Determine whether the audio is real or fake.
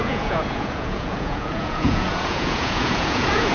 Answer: fake